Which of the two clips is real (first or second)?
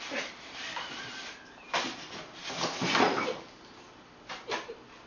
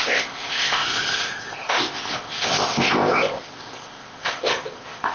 first